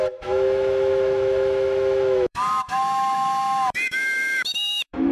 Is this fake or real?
fake